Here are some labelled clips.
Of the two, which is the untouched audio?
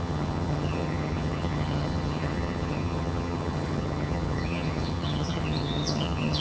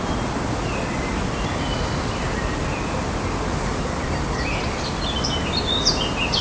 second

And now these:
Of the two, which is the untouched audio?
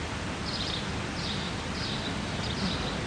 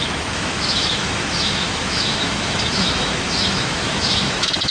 first